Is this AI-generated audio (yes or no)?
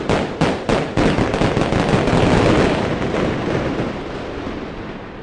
no